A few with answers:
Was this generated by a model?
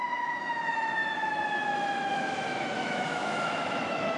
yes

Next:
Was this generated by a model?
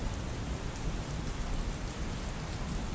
no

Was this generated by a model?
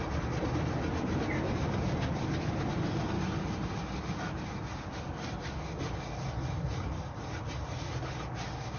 no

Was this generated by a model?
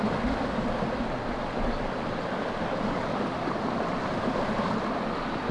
no